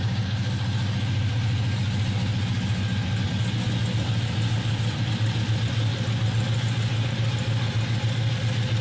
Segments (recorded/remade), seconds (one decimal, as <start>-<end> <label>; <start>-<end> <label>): 0.0-8.8 recorded